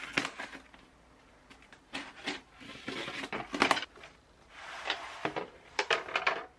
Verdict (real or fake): real